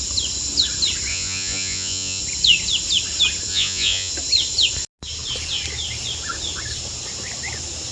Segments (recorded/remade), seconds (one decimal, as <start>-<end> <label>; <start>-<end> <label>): 0.0-1.1 recorded; 1.1-2.2 remade; 2.2-3.5 recorded; 3.5-4.1 remade; 4.1-7.9 recorded